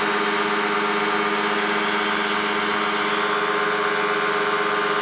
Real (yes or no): yes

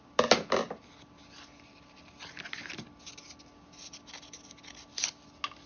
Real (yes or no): yes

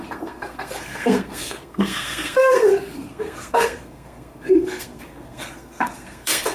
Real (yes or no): no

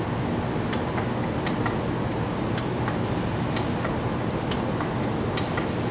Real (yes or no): yes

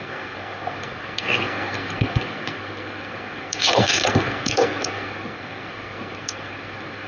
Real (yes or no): no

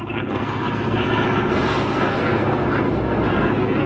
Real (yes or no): no